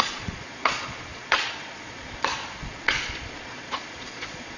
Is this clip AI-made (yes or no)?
yes